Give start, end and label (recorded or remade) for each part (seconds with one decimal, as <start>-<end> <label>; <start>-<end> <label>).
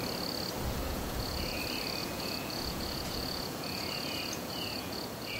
0.0-0.8 recorded; 0.8-1.6 remade; 1.6-2.0 recorded; 2.0-5.4 remade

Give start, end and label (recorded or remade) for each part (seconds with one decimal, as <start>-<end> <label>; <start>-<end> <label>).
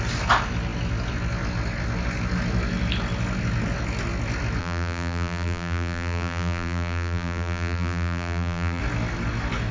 0.0-4.6 recorded; 4.6-8.8 remade; 8.8-9.7 recorded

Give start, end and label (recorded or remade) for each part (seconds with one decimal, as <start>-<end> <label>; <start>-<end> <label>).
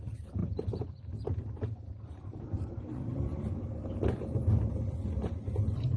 0.0-0.4 recorded; 0.4-4.0 remade; 4.0-6.0 recorded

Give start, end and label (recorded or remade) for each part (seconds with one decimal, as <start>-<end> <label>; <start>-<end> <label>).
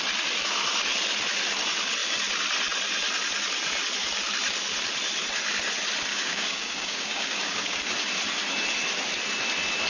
0.0-6.1 recorded; 6.1-7.8 remade; 7.8-9.9 recorded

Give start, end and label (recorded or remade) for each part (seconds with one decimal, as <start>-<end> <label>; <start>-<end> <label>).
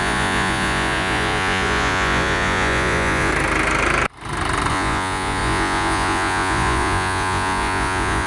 0.0-3.3 remade; 3.3-4.7 recorded; 4.7-8.3 remade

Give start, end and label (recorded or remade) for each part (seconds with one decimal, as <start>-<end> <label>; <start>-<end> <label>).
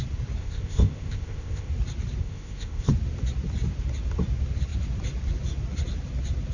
0.0-0.4 recorded; 0.4-1.7 remade; 1.7-2.2 recorded; 2.2-2.9 remade; 2.9-6.5 recorded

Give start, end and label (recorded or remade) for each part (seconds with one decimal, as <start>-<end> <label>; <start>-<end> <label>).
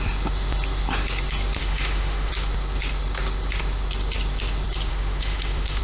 0.0-1.6 recorded; 1.6-2.3 remade; 2.3-4.9 recorded; 4.9-5.8 remade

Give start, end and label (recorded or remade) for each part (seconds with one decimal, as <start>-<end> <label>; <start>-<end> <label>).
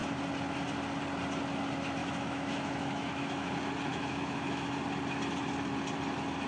0.0-2.0 recorded; 2.0-3.5 remade; 3.5-3.9 recorded; 3.9-4.7 remade; 4.7-6.5 recorded